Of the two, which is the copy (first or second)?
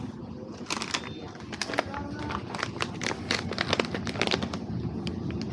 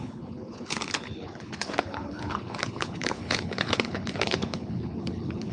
second